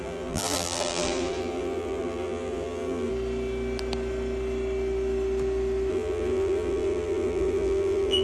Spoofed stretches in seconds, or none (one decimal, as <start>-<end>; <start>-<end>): 0.0-3.1; 5.9-8.2